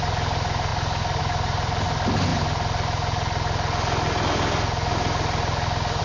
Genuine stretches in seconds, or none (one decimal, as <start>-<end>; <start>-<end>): 0.0-6.0